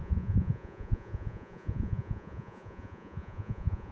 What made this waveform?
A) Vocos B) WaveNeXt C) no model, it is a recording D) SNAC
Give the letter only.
A